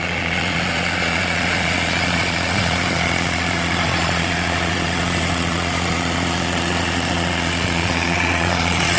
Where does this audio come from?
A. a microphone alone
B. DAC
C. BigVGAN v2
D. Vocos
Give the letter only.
D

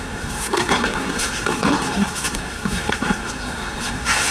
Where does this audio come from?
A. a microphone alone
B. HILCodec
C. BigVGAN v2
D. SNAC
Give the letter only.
D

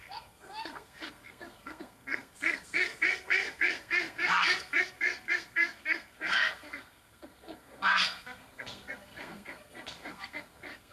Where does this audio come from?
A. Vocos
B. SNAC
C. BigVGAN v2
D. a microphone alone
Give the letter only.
B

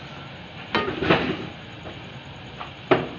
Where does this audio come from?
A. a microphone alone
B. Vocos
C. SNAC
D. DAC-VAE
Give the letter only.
A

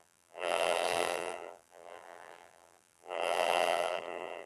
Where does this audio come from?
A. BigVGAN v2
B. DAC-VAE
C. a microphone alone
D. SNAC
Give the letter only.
A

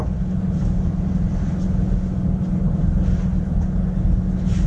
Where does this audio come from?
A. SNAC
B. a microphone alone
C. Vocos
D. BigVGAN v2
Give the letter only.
B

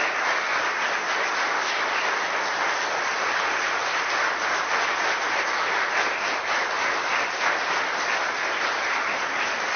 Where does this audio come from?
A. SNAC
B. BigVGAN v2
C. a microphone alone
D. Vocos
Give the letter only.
C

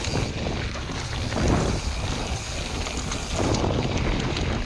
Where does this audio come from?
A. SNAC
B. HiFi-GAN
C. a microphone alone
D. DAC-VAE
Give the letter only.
C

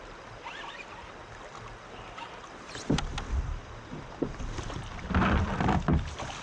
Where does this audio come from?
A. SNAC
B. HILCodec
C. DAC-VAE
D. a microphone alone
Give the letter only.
D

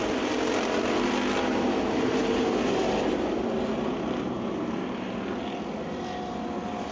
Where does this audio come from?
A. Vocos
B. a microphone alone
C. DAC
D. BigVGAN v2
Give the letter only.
B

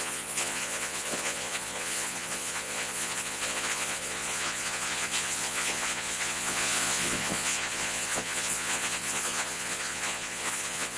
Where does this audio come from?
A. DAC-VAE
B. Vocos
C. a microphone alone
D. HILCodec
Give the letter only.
B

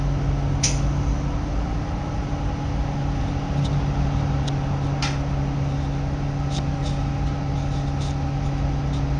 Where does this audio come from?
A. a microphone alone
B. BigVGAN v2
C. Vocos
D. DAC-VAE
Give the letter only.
A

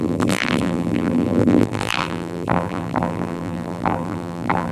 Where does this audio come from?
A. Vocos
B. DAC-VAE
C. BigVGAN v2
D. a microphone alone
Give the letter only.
C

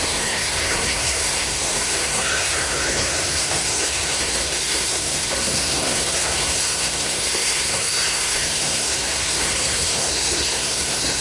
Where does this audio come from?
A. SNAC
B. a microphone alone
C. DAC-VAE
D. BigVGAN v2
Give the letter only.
A